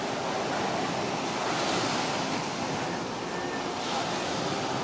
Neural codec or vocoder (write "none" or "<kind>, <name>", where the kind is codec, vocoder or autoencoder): none